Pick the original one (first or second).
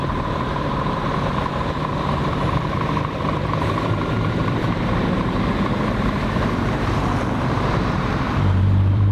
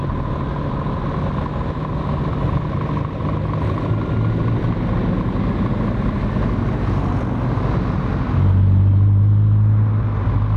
second